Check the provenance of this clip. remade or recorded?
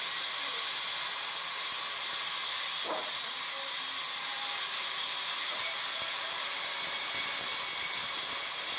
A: recorded